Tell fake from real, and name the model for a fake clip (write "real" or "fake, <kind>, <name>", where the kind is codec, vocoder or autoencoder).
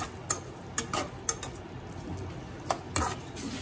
real